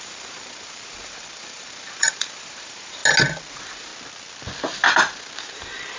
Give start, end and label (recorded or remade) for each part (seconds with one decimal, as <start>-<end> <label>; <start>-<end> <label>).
0.0-3.0 remade; 3.0-3.5 recorded; 3.5-3.9 remade; 3.9-5.4 recorded; 5.4-6.0 remade